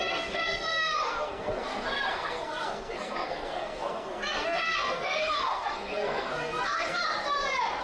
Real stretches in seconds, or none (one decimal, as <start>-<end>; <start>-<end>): 7.0-7.8